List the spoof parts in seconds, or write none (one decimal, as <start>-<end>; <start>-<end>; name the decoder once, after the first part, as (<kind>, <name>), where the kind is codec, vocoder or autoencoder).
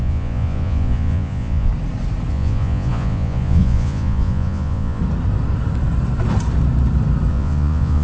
0.0-1.7 (vocoder, Vocos); 2.3-5.0; 7.3-8.0